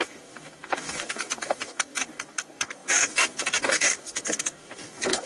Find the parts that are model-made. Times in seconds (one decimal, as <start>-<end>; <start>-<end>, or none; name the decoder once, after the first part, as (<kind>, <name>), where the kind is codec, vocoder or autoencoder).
0.0-5.3 (codec, DAC)